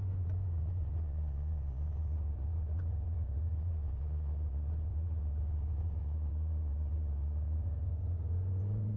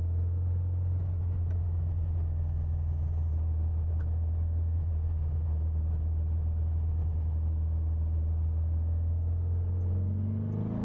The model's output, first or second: first